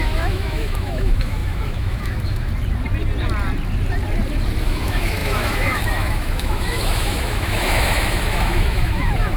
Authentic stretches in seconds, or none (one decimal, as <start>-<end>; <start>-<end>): 2.5-4.6